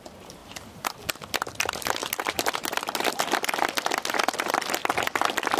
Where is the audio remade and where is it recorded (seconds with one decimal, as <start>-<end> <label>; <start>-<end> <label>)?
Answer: 0.0-0.4 recorded; 0.4-0.9 remade; 0.9-2.0 recorded; 2.0-3.1 remade; 3.1-4.8 recorded; 4.8-5.6 remade